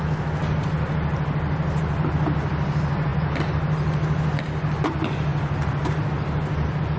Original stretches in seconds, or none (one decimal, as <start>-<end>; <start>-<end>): 0.0-7.0